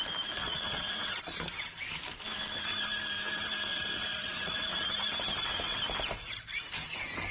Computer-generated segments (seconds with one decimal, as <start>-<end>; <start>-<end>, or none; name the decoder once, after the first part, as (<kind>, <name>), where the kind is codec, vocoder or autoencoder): 0.4-1.2 (vocoder, Vocos); 3.7-4.8